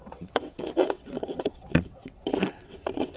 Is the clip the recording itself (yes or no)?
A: no